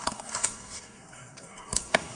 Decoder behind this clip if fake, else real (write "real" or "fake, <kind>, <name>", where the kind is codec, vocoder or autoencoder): fake, codec, SNAC